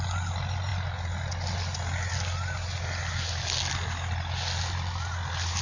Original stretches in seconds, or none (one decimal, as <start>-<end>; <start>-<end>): 0.0-5.6